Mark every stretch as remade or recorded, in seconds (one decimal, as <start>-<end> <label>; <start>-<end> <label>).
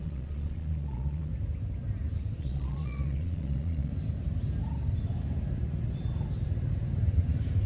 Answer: 0.0-1.3 remade; 1.3-2.4 recorded; 2.4-3.9 remade; 3.9-7.7 recorded